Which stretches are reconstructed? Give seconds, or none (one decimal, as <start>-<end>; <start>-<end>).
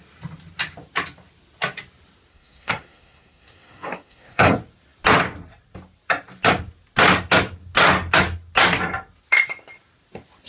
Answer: 2.3-4.5